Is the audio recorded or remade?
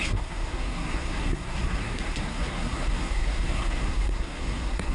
remade